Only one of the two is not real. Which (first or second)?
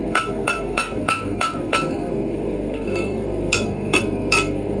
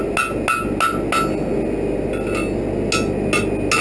first